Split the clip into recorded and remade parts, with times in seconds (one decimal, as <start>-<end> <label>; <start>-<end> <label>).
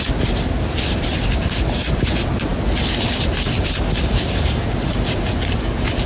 0.0-6.1 recorded